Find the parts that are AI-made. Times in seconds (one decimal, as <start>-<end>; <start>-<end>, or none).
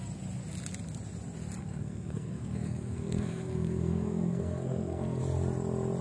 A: 1.6-5.2